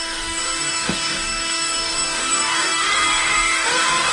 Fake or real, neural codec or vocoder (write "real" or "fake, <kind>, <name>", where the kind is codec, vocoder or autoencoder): fake, codec, DAC